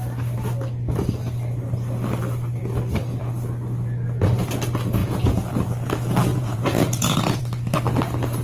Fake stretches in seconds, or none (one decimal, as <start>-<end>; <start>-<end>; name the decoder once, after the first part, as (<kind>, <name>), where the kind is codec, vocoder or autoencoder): 5.0-5.5 (vocoder, Vocos); 6.3-7.4